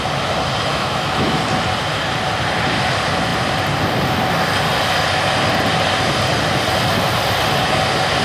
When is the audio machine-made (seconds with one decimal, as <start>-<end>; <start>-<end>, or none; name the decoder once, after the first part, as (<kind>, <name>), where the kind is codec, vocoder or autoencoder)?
0.7-1.4 (autoencoder, DAC-VAE)